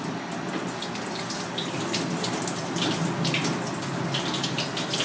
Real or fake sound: real